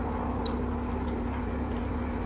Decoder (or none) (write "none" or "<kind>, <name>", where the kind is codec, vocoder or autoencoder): none